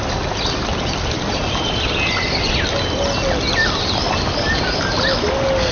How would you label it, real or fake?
real